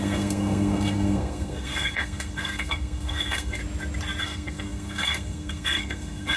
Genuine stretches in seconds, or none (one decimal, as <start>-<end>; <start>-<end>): 3.6-4.2